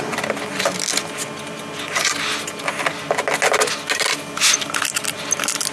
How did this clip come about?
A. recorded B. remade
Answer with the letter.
A